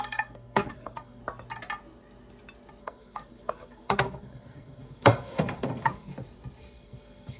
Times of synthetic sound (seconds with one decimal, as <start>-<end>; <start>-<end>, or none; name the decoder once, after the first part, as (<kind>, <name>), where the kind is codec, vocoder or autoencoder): 0.0-1.2 (codec, SNAC); 2.8-6.1; 6.6-7.4